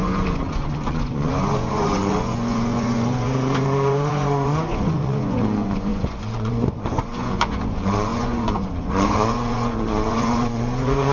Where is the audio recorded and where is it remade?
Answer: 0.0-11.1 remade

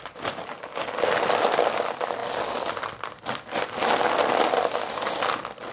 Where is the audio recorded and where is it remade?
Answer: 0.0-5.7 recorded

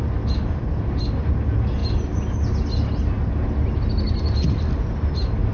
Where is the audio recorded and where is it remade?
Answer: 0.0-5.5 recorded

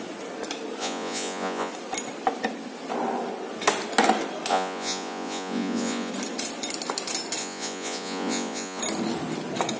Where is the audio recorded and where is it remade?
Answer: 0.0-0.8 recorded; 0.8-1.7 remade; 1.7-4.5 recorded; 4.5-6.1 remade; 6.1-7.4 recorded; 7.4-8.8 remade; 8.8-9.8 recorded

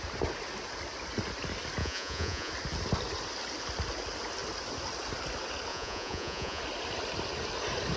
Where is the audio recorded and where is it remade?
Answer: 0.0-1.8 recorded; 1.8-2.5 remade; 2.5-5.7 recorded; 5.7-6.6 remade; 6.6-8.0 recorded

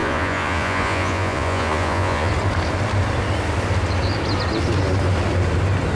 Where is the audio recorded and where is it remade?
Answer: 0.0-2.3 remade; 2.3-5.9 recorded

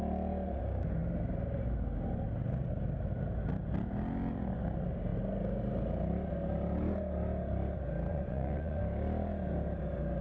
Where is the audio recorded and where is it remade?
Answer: 0.0-8.1 recorded; 8.1-8.8 remade; 8.8-10.2 recorded